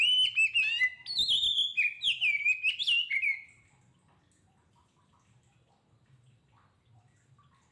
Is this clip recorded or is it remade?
recorded